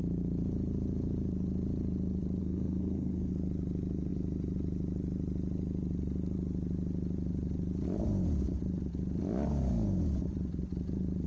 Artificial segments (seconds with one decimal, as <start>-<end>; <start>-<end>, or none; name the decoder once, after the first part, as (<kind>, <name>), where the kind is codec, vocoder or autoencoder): 2.4-3.3 (codec, SNAC)